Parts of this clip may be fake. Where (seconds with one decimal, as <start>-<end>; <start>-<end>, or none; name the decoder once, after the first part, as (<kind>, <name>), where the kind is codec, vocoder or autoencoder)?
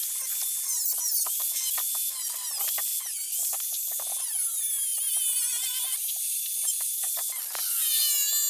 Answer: none